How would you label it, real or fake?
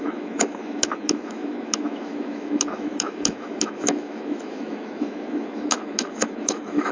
fake